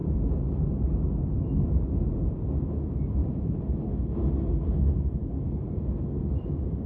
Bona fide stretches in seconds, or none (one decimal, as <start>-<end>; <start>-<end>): 0.0-3.2; 3.9-6.9